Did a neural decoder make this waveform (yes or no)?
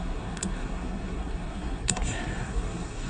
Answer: yes